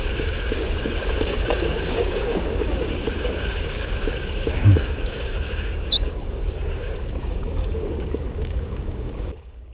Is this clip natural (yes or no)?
no